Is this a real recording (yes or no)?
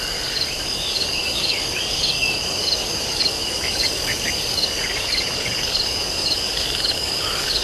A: no